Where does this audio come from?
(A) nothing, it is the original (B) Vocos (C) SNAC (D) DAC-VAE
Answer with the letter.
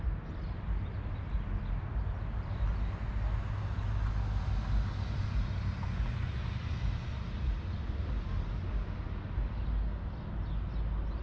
A